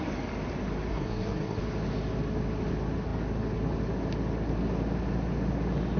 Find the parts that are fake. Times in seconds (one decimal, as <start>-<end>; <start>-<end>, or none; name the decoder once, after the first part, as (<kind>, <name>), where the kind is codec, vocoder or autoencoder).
0.9-1.6 (codec, SNAC)